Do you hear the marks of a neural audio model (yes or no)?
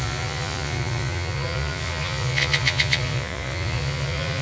yes